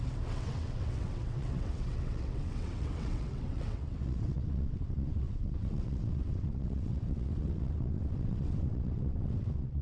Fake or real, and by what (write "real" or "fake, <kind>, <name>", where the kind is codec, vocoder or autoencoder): fake, vocoder, WaveNeXt